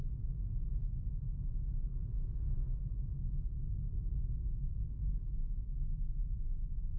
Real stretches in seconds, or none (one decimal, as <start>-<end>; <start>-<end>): 0.0-0.8; 1.4-1.9; 6.1-7.0